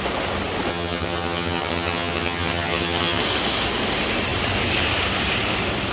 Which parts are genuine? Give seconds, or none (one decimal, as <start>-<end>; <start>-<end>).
0.0-0.7; 3.2-5.9